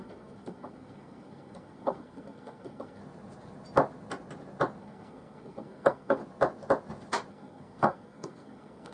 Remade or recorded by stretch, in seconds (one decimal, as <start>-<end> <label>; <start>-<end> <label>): 0.0-3.0 remade; 3.0-4.8 recorded; 4.8-6.2 remade; 6.2-7.3 recorded; 7.3-8.9 remade